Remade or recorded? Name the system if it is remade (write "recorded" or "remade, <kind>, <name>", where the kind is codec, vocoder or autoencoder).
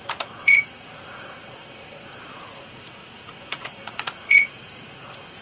remade, vocoder, Vocos